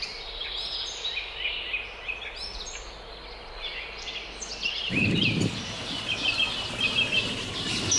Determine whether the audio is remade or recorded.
recorded